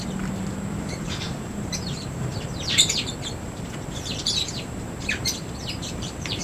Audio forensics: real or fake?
fake